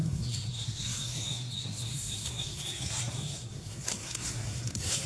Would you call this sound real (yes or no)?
no